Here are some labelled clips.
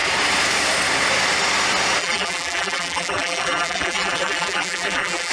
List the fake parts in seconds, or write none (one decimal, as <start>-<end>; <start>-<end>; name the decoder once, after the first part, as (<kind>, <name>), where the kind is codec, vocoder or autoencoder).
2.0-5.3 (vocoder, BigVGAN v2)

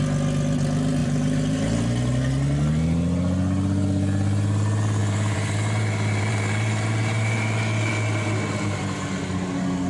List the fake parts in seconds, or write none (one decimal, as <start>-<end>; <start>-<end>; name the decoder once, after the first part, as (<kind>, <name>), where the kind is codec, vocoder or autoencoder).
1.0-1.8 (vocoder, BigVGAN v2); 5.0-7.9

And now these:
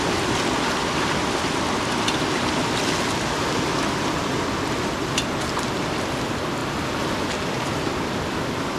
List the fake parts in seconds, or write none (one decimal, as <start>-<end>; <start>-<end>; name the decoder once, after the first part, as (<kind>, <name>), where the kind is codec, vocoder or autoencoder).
none

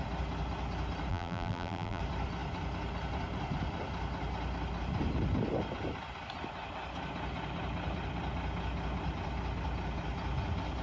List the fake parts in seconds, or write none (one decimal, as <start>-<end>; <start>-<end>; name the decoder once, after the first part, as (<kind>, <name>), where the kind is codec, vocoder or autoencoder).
1.1-2.0 (vocoder, BigVGAN v2)

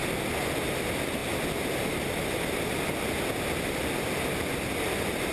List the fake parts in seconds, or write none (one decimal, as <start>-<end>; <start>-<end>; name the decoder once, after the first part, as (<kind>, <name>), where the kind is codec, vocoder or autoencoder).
none